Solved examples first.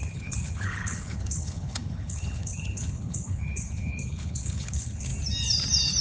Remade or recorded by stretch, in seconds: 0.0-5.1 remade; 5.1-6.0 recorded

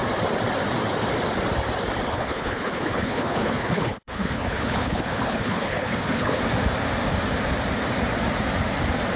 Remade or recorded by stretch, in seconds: 0.0-2.1 recorded; 2.1-6.4 remade; 6.4-9.2 recorded

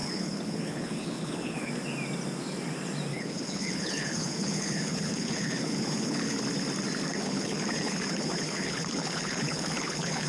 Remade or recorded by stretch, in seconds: 0.0-1.7 remade; 1.7-3.1 recorded; 3.1-6.4 remade; 6.4-7.1 recorded; 7.1-10.3 remade